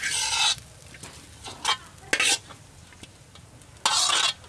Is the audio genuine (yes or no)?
yes